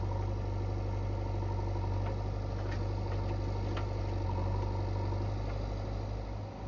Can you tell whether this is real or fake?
real